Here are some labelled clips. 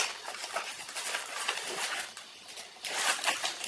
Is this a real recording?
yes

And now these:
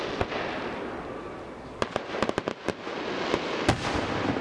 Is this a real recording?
yes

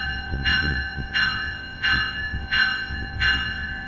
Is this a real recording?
no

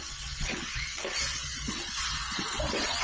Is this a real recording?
no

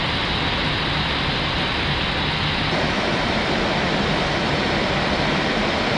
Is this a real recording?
yes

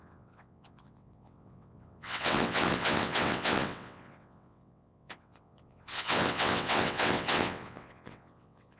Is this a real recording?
no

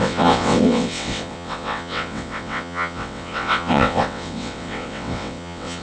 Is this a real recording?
no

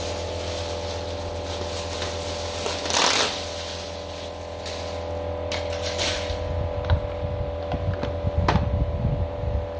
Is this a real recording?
yes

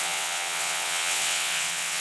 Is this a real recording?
no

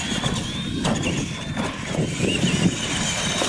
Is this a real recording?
yes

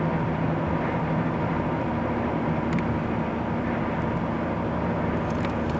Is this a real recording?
yes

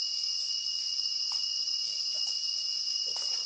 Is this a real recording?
yes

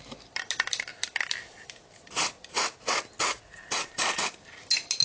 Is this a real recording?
yes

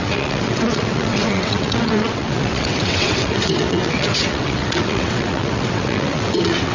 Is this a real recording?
no